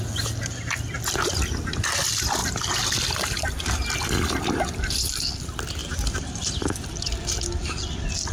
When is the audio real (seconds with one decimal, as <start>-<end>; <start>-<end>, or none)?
0.0-2.4; 4.1-5.8; 7.2-8.3